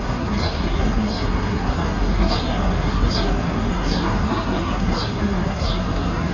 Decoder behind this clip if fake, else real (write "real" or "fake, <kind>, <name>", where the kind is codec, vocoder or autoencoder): fake, codec, SNAC